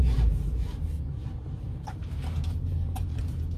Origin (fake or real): fake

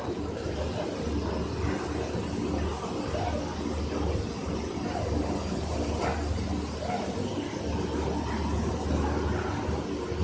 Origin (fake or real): real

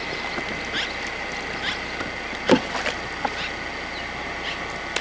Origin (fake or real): real